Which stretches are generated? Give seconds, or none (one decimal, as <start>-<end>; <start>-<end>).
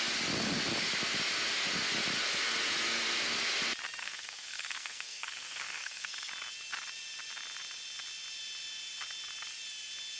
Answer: 4.0-6.3